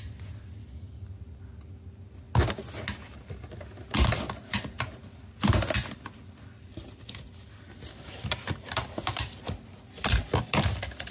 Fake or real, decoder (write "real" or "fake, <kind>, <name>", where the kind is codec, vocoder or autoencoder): real